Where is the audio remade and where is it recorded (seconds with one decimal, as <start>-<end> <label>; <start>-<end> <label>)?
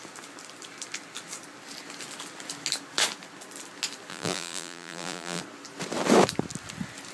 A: 0.0-4.1 recorded; 4.1-5.4 remade; 5.4-7.1 recorded